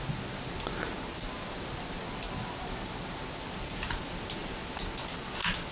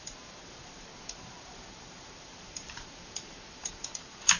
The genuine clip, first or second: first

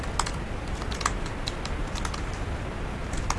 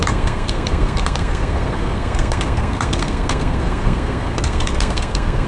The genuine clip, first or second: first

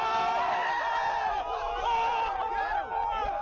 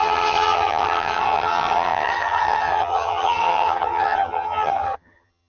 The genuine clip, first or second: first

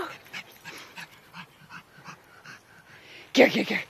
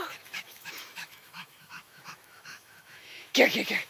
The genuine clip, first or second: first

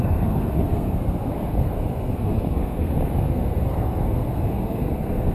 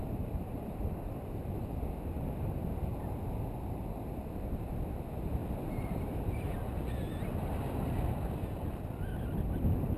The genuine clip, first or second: second